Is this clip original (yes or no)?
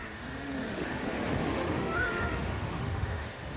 no